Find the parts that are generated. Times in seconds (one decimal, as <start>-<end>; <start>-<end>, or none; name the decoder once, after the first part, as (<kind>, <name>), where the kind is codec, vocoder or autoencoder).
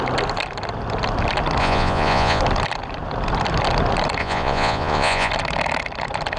1.6-2.4 (vocoder, Vocos); 4.2-5.3